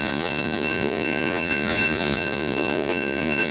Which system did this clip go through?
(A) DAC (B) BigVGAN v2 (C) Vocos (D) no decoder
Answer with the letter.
C